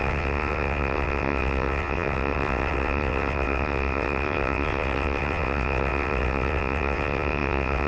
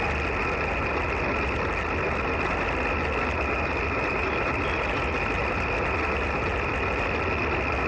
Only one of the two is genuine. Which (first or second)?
second